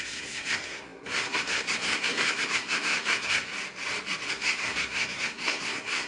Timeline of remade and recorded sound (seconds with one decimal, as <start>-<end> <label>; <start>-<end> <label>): 0.0-3.5 remade; 3.5-4.3 recorded; 4.3-6.1 remade